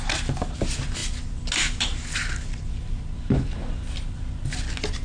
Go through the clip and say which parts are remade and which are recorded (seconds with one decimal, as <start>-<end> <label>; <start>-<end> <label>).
0.0-5.0 recorded